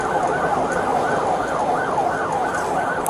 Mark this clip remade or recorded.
recorded